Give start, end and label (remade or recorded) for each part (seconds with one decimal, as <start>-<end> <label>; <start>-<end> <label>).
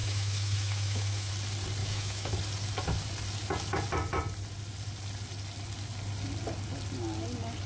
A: 0.0-1.3 remade; 1.3-1.8 recorded; 1.8-2.3 remade; 2.3-7.7 recorded